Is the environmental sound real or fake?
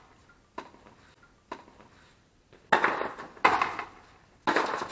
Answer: real